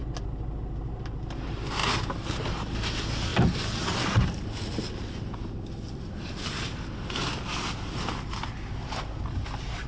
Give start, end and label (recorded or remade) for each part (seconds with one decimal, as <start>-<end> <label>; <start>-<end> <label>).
0.0-9.9 recorded